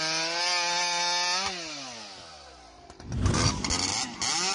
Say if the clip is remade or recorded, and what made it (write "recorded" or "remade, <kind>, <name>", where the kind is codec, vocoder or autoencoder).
recorded